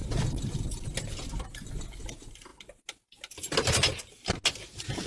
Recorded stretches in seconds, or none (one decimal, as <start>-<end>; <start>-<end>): 0.0-5.1